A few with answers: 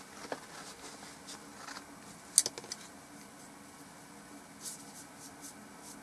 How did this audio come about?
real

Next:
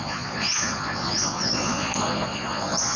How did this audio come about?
fake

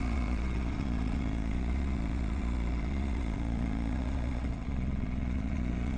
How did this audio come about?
fake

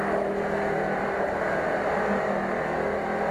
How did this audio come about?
real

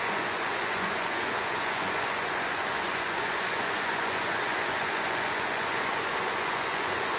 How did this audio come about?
fake